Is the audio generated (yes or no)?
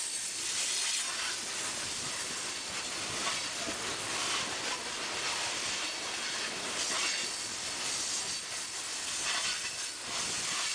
no